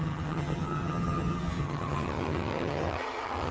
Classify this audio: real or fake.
fake